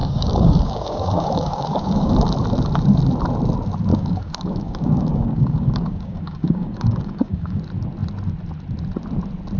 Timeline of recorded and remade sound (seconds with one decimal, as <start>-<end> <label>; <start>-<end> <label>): 0.0-2.1 remade; 2.1-3.9 recorded; 3.9-7.6 remade; 7.6-9.6 recorded